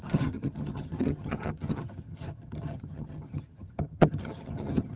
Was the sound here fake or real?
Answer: fake